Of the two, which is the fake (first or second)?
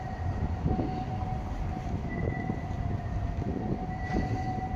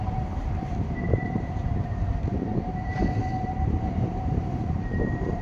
second